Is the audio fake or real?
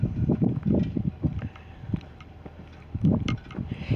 fake